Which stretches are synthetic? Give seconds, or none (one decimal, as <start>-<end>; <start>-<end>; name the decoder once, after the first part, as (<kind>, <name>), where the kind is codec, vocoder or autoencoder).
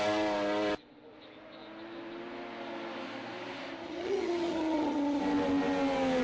3.8-5.2 (vocoder, HiFi-GAN)